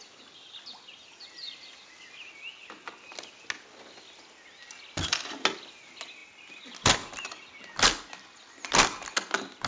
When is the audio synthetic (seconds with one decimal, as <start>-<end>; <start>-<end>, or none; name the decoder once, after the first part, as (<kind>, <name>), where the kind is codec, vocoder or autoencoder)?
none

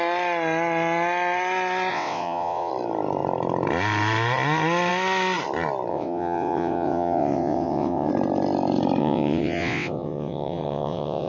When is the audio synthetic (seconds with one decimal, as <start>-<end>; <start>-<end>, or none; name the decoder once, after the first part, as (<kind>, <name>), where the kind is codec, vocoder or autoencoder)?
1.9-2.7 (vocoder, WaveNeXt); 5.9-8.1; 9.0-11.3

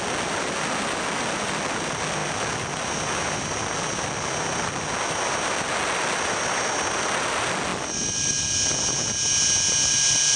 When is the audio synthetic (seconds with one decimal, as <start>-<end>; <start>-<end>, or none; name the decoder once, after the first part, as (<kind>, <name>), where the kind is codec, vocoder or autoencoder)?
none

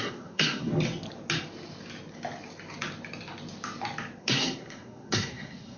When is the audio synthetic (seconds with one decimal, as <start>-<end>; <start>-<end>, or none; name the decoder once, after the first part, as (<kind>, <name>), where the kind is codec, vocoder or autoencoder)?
0.0-0.7 (codec, SNAC); 4.2-5.8

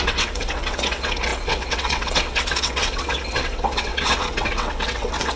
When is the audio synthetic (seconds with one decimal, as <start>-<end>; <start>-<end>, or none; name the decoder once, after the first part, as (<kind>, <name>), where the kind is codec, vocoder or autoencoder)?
0.0-5.4 (vocoder, WaveNeXt)